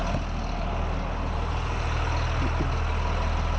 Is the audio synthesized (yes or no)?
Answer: no